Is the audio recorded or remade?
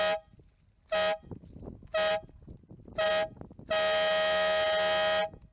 recorded